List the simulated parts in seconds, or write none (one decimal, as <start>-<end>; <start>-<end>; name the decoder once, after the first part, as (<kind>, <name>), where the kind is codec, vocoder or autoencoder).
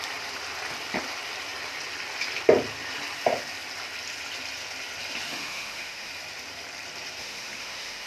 5.3-6.1 (autoencoder, DAC-VAE); 7.2-8.1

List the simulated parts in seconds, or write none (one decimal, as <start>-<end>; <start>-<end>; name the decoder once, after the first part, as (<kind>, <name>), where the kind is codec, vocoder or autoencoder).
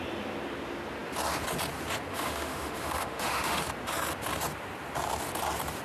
2.1-3.6 (autoencoder, DAC-VAE)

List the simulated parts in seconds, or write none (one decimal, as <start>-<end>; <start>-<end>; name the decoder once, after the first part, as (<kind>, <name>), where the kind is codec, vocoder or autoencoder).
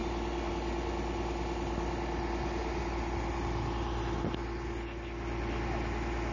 none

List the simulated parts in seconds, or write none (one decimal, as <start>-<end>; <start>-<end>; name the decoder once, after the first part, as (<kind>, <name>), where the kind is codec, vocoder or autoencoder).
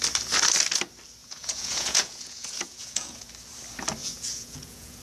1.2-3.3 (vocoder, Vocos); 4.0-5.0